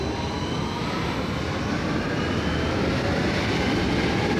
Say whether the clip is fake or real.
real